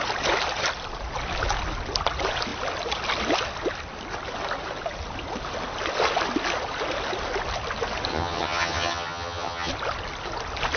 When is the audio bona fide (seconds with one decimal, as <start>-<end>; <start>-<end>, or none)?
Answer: 0.0-8.1; 9.7-10.8